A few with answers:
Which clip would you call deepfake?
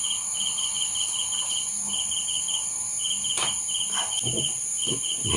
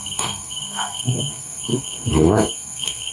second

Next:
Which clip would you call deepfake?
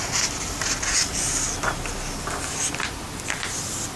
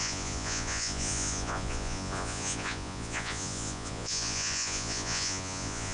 second